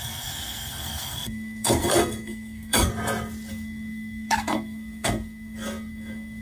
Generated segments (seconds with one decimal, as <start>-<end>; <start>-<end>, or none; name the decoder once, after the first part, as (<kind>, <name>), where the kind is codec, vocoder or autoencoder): 0.0-2.9 (codec, SNAC); 3.5-6.4